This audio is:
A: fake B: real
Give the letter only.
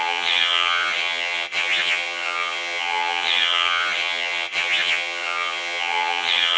A